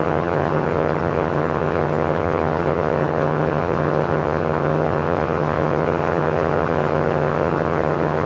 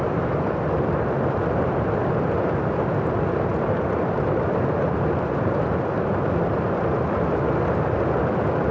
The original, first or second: second